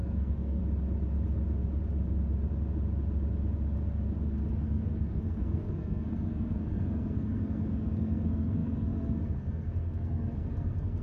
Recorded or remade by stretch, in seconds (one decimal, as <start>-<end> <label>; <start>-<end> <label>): 0.0-0.6 remade; 0.6-4.5 recorded; 4.5-11.0 remade